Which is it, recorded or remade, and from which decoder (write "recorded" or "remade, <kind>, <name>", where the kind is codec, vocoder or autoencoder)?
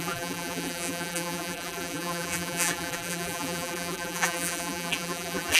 remade, vocoder, BigVGAN v2